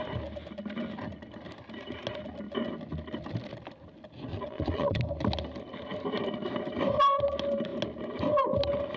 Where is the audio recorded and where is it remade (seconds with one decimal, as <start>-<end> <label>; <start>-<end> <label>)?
0.0-4.3 recorded; 4.3-5.0 remade; 5.0-9.0 recorded

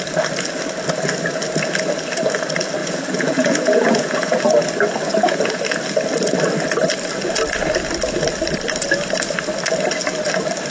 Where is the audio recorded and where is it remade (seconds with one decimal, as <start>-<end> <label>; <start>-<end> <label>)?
0.0-2.8 recorded; 2.8-4.4 remade; 4.4-5.1 recorded; 5.1-5.6 remade; 5.6-10.7 recorded